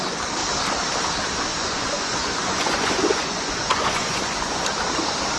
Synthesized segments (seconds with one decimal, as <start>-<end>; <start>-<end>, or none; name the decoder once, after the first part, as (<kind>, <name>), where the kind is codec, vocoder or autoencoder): 1.5-4.6 (vocoder, Vocos)